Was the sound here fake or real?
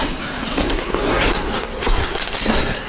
fake